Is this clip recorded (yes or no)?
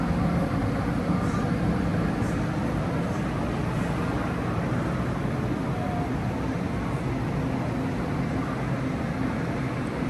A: yes